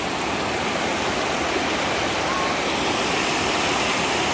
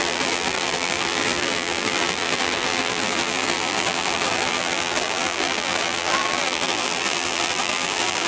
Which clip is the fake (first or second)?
second